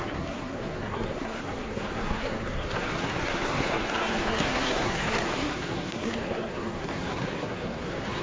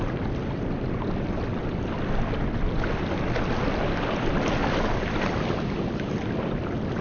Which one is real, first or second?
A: second